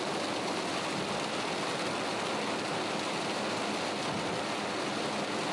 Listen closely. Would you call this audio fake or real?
real